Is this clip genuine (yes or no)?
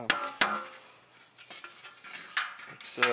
yes